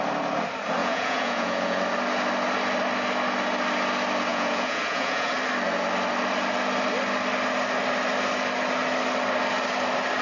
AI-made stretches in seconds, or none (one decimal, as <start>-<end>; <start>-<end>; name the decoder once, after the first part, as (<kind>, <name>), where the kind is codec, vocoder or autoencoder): 0.8-1.8 (vocoder, Vocos); 4.3-5.3